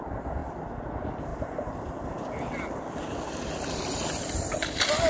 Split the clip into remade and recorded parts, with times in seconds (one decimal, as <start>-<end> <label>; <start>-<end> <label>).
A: 0.0-5.1 recorded